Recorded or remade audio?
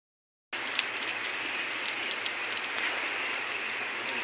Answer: recorded